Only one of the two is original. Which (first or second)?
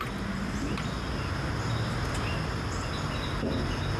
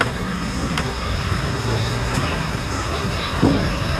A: first